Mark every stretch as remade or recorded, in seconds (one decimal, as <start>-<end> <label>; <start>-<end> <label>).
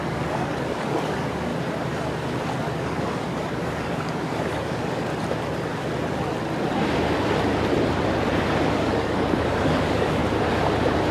0.0-1.5 remade; 1.5-2.6 recorded; 2.6-5.1 remade; 5.1-8.7 recorded; 8.7-10.2 remade; 10.2-11.1 recorded